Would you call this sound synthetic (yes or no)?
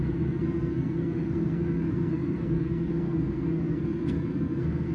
yes